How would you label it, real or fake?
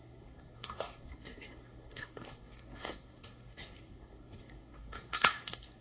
fake